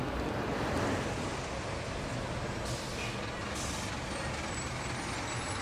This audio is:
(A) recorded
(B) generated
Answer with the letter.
A